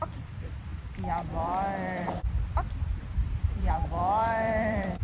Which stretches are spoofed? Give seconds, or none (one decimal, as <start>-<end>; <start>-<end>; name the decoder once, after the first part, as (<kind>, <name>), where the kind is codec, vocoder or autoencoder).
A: 0.0-5.0 (vocoder, BigVGAN v2)

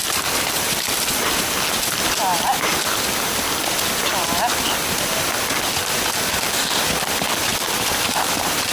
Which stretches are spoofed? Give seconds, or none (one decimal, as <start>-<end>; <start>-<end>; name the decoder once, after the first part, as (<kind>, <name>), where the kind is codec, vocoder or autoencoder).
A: 0.0-0.7 (vocoder, BigVGAN v2); 7.5-8.7

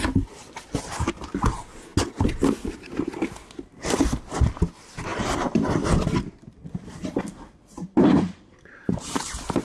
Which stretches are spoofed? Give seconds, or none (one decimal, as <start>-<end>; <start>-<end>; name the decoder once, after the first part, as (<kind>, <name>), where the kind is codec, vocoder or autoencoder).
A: 5.1-8.7 (vocoder, BigVGAN v2)